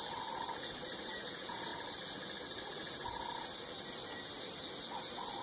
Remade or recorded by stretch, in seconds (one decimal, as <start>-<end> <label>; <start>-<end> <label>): 0.0-5.4 recorded